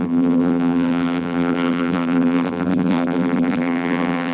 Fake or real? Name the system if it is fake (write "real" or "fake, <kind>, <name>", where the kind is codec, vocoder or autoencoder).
fake, vocoder, BigVGAN v2